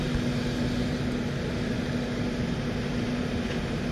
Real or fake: real